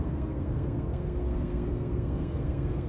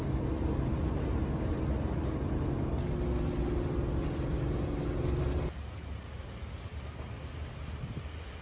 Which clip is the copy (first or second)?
first